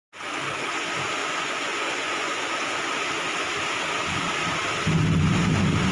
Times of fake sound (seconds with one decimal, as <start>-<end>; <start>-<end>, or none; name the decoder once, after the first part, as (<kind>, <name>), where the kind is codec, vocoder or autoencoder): 1.2-2.9 (vocoder, Vocos)